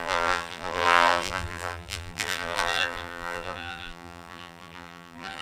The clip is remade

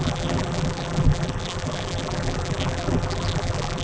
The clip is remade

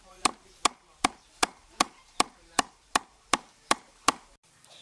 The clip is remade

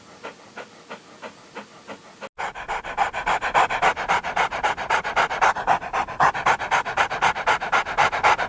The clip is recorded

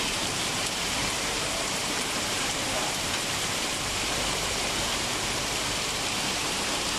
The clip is remade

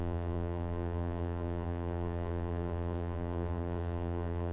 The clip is remade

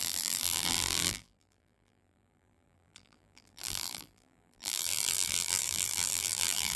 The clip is remade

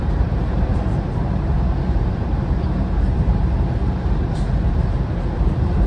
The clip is remade